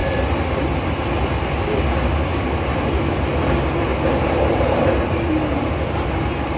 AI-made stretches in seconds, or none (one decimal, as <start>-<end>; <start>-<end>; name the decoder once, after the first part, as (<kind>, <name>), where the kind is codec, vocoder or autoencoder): none